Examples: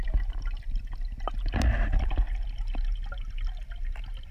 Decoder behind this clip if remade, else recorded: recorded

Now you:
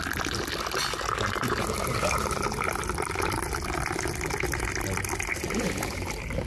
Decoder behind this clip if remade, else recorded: recorded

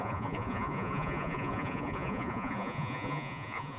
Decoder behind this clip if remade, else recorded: remade, vocoder, Vocos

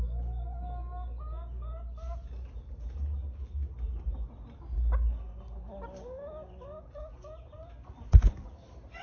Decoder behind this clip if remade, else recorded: recorded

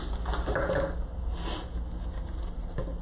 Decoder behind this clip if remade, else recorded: recorded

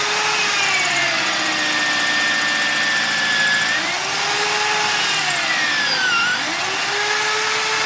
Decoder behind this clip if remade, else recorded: recorded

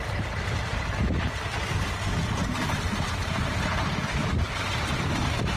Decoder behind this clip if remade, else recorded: remade, vocoder, BigVGAN v2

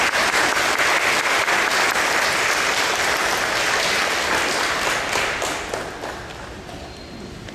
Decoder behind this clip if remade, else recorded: recorded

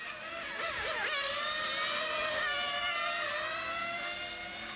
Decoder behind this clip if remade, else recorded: recorded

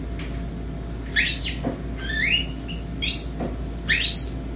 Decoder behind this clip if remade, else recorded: recorded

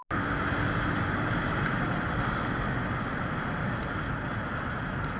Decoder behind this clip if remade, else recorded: recorded